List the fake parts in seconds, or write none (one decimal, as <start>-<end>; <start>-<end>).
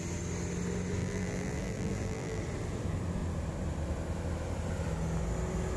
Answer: 1.0-2.4